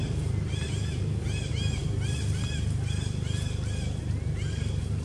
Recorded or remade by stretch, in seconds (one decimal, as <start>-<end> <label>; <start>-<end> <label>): 0.0-5.0 recorded